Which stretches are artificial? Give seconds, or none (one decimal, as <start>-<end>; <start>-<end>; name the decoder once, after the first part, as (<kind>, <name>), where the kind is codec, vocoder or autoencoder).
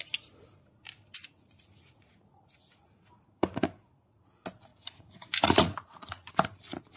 1.1-4.2 (vocoder, Vocos); 4.7-6.3